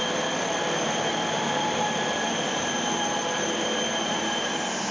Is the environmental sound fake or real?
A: fake